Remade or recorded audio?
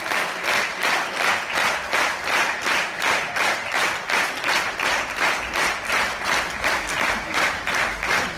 recorded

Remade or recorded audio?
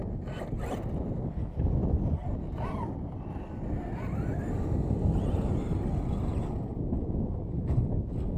recorded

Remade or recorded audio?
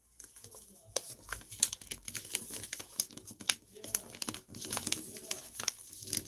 remade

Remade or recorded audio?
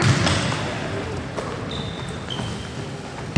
recorded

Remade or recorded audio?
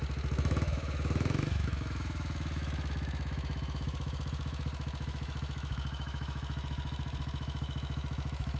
remade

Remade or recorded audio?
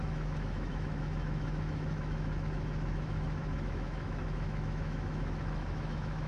remade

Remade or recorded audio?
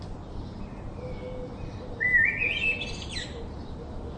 recorded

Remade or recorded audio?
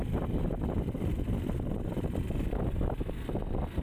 recorded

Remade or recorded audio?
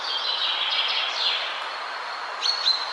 recorded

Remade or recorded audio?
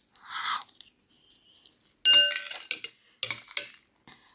recorded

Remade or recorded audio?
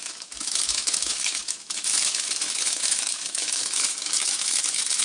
remade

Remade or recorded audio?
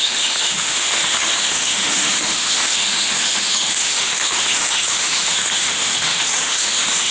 remade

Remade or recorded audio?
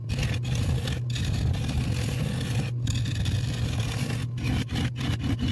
recorded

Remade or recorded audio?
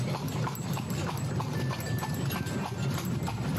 recorded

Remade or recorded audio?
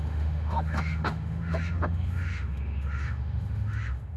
remade